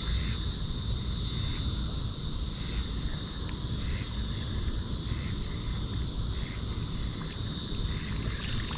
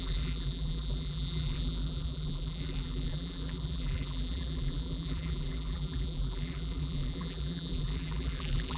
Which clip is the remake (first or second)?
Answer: second